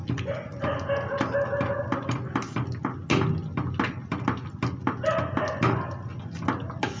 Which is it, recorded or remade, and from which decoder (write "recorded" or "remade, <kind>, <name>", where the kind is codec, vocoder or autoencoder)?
recorded